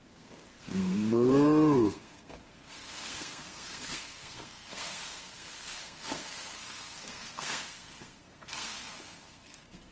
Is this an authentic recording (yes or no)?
no